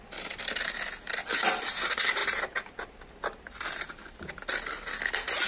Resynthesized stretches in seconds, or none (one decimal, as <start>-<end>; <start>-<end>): none